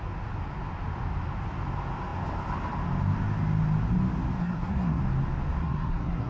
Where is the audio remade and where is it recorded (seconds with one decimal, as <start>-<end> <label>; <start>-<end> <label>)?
0.0-4.4 recorded; 4.4-5.0 remade; 5.0-5.6 recorded; 5.6-6.3 remade